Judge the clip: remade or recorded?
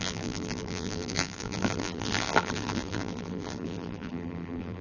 remade